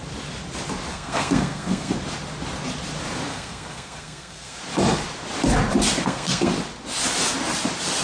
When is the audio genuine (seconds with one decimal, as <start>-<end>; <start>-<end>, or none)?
0.0-0.9; 1.9-3.3; 4.6-6.0; 6.5-8.0